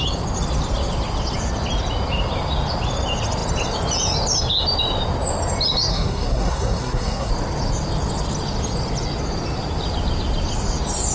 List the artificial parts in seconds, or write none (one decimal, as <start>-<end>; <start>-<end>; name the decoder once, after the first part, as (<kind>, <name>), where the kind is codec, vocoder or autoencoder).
5.9-7.3 (codec, SNAC)